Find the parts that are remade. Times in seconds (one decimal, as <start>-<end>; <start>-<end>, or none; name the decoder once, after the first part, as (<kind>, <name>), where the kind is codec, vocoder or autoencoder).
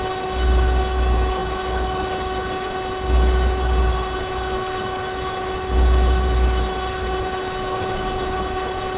0.0-9.0 (codec, HILCodec)